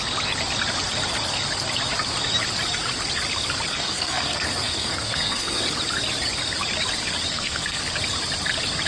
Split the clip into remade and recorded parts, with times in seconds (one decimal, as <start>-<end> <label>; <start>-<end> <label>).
0.0-3.7 recorded; 3.7-5.6 remade; 5.6-7.3 recorded; 7.3-7.8 remade; 7.8-8.9 recorded